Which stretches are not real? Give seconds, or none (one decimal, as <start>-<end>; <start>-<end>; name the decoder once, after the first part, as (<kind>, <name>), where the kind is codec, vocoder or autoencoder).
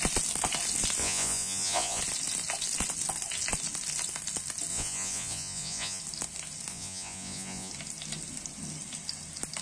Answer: 1.0-2.0 (vocoder, Vocos); 4.7-6.0; 6.7-7.7